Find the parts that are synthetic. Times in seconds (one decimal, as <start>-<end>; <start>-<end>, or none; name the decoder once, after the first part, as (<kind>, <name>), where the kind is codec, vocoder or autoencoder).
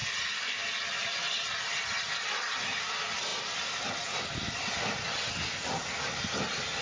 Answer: none